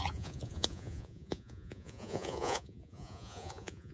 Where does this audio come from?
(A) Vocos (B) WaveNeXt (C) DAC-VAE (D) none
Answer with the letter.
A